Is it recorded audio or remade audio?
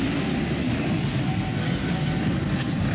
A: recorded